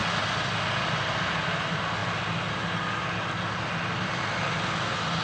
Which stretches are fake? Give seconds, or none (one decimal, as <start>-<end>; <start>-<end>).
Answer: none